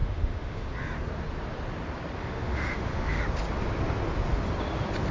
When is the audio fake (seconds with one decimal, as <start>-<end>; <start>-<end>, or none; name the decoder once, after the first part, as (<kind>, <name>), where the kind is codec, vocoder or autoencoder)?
0.0-0.7 (autoencoder, DAC-VAE); 2.2-3.2